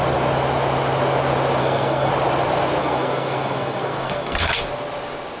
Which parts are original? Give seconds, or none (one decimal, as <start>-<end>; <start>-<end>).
0.0-1.6; 2.1-2.8; 4.6-5.4